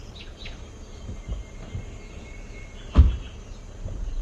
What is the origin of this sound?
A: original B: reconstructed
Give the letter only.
A